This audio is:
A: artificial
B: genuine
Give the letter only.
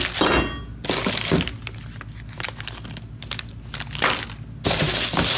B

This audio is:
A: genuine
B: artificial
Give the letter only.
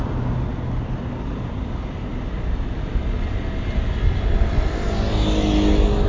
A